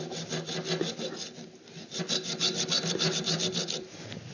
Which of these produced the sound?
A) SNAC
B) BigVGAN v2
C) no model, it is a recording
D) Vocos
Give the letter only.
C